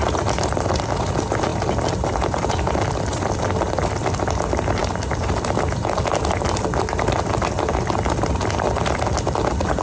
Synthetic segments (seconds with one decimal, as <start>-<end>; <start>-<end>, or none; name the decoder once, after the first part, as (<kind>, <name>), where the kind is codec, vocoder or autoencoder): none